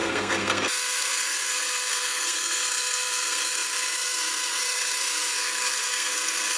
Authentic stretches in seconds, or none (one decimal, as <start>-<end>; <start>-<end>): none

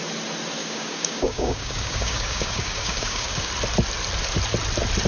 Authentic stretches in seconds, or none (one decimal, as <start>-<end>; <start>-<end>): 0.0-0.6; 3.5-5.1

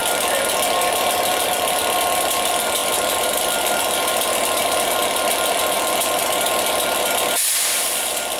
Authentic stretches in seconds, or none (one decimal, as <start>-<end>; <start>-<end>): 0.0-0.9; 5.0-5.6

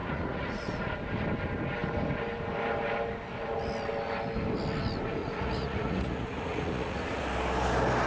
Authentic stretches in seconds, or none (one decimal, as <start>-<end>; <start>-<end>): 0.8-5.2; 7.2-8.1

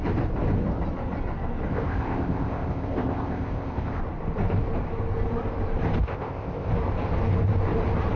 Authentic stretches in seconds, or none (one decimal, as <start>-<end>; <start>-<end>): 0.0-1.7; 4.0-6.0; 6.7-8.2